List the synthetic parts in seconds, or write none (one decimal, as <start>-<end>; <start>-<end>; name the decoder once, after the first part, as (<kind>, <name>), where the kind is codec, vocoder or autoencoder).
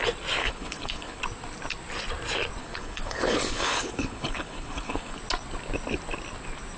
0.4-1.2 (codec, HILCodec); 2.6-5.2